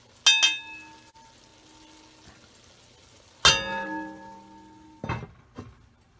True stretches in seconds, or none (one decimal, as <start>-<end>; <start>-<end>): 0.0-6.2